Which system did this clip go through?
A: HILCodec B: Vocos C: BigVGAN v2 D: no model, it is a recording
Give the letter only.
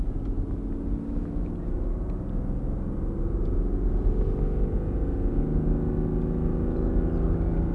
D